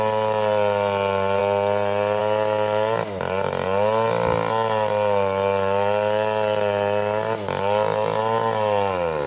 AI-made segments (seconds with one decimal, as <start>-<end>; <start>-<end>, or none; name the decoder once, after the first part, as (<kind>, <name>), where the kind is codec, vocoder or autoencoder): none